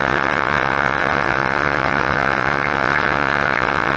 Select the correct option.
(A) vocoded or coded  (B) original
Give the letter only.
A